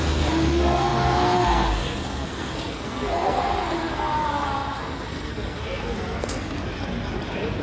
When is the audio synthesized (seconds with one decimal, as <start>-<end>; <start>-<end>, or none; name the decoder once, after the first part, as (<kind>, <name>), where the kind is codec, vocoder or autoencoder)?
0.0-6.6 (codec, SNAC)